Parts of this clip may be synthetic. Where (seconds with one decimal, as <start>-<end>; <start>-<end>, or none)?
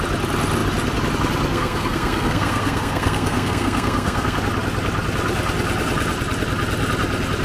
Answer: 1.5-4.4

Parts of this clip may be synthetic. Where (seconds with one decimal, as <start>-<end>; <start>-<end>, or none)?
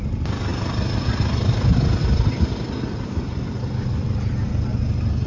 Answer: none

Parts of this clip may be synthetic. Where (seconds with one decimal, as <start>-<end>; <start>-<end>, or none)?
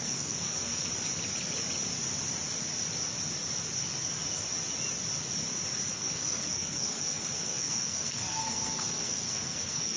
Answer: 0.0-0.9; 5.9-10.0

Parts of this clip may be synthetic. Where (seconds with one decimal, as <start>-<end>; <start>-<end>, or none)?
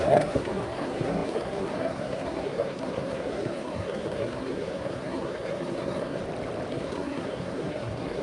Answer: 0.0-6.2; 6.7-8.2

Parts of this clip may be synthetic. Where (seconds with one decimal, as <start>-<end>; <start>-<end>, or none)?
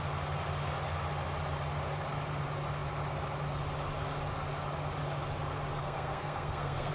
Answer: 5.8-6.9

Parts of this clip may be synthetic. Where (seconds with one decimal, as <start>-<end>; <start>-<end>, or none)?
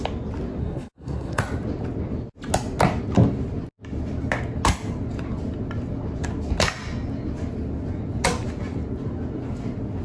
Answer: 0.6-1.4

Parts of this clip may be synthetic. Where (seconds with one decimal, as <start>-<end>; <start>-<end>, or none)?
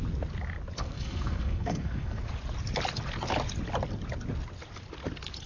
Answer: 0.8-2.2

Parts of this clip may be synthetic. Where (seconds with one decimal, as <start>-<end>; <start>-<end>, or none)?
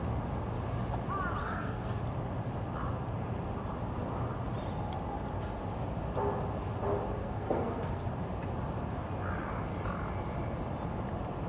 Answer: 1.4-2.0; 7.2-8.1